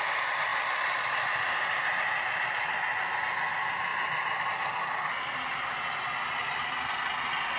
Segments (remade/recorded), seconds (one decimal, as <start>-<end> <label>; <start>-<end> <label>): 0.0-7.6 recorded